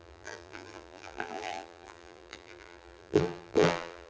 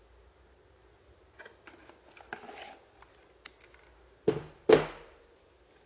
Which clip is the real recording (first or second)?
second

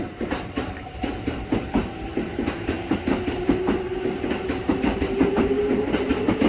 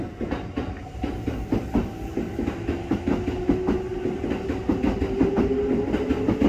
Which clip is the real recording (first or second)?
second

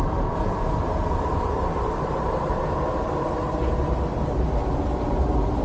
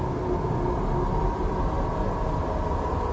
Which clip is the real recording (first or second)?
second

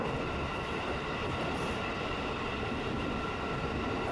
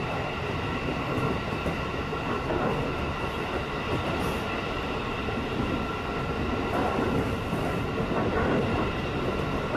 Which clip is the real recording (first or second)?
second